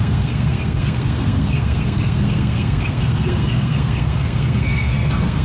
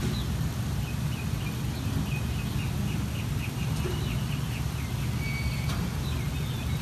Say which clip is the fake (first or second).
first